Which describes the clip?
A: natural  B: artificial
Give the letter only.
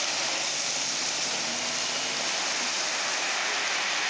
A